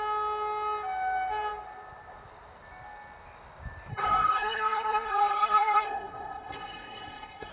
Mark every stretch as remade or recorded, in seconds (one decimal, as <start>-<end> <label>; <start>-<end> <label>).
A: 0.0-3.9 recorded; 3.9-7.5 remade